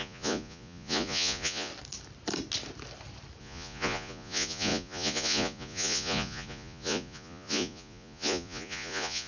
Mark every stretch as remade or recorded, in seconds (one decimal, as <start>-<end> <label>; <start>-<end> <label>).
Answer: 0.0-1.7 remade; 1.7-3.4 recorded; 3.4-9.3 remade